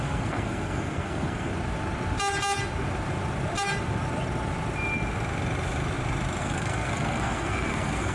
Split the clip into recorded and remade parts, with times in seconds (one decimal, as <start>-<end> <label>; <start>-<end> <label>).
0.0-1.5 remade; 1.5-6.4 recorded; 6.4-8.1 remade